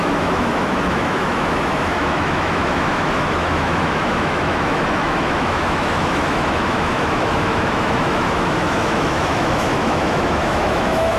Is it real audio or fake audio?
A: fake